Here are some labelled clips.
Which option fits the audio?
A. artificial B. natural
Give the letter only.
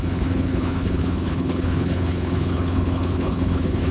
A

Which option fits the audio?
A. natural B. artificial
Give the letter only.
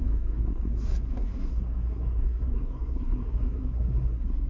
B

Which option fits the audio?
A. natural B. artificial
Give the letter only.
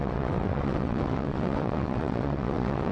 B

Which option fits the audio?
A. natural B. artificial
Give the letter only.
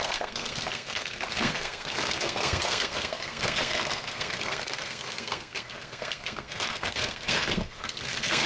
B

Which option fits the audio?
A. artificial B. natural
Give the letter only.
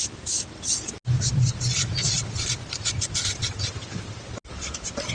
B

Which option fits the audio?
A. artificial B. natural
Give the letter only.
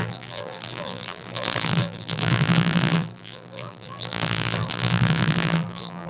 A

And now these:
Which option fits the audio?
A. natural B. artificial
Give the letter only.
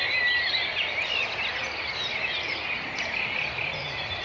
A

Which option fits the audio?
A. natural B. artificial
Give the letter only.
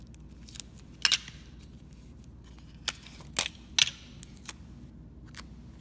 A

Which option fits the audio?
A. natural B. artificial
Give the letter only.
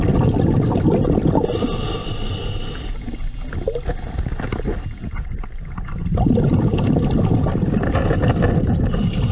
A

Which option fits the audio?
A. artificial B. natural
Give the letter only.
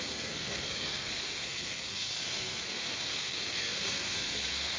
A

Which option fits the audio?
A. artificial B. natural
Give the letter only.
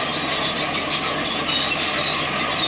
B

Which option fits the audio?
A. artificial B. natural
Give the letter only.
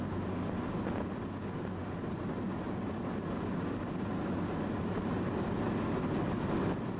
B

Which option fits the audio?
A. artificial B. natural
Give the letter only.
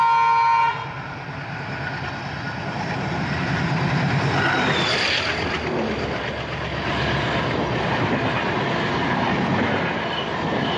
B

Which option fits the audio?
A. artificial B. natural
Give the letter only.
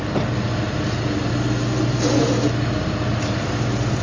B